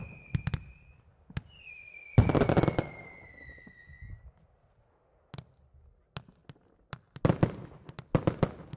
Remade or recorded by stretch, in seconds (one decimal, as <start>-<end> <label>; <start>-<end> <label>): 0.0-8.8 recorded